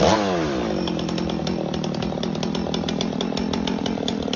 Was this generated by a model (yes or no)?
no